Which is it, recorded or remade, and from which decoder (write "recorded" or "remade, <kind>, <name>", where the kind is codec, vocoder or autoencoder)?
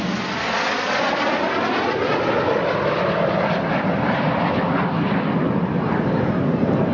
recorded